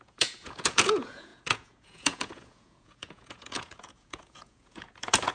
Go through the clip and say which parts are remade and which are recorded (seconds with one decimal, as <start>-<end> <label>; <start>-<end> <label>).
0.0-5.3 remade